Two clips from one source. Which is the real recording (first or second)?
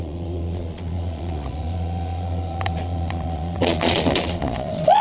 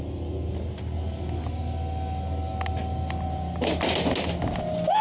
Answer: second